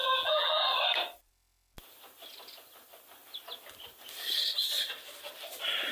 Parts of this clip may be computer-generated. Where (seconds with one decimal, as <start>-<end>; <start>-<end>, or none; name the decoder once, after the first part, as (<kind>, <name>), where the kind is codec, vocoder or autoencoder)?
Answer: 0.0-0.6 (vocoder, BigVGAN v2)